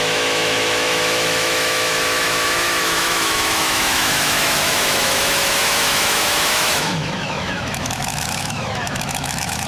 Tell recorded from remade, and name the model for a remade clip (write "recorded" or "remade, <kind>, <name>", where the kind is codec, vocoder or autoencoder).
remade, autoencoder, DAC-VAE